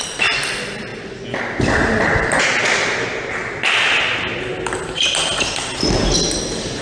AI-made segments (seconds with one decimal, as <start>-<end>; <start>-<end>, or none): none